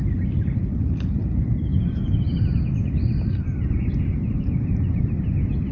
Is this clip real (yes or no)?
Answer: no